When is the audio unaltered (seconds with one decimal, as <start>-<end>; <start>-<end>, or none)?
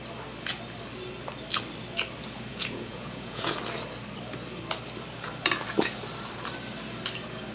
0.0-2.5; 3.5-7.5